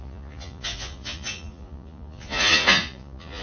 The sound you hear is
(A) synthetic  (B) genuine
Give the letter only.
A